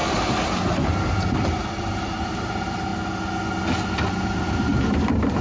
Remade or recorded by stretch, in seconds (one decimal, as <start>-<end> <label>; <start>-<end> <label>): 0.0-1.8 recorded; 1.8-2.9 remade; 2.9-4.1 recorded; 4.1-5.4 remade